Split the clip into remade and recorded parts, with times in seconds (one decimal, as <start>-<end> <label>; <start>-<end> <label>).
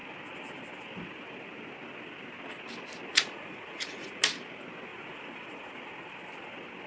0.0-3.1 recorded; 3.1-4.2 remade; 4.2-4.9 recorded; 4.9-5.7 remade; 5.7-6.9 recorded